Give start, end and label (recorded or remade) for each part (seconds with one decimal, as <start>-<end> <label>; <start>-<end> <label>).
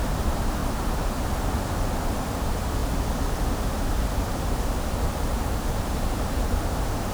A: 0.0-0.6 remade; 0.6-2.2 recorded; 2.2-2.8 remade; 2.8-4.2 recorded; 4.2-7.1 remade